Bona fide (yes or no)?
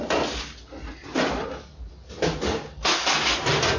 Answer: yes